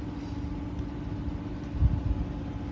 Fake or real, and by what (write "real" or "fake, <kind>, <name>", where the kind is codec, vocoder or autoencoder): real